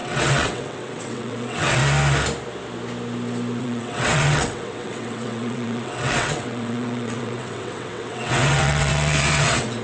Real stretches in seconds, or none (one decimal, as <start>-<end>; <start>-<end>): 1.8-3.6